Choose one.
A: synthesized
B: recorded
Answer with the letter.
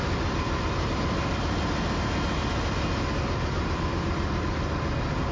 B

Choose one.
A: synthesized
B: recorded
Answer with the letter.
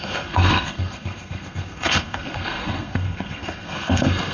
A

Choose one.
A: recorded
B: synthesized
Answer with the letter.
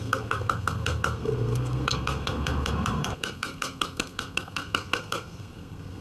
B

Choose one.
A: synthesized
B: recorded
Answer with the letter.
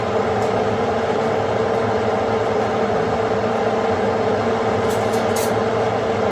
B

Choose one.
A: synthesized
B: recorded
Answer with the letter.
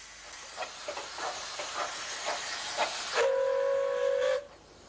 B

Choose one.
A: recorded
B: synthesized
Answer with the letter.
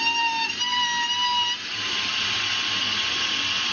A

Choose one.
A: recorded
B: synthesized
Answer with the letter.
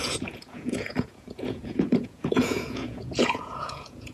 B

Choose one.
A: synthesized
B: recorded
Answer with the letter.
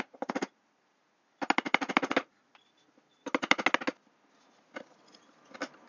B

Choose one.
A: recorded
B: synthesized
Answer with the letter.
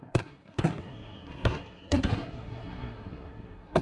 B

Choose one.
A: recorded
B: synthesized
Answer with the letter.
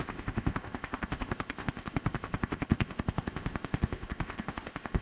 B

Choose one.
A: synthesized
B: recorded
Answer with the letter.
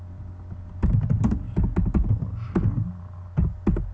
B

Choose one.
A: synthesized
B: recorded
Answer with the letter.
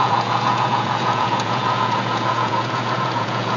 A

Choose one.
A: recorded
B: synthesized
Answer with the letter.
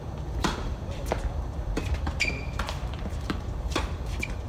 B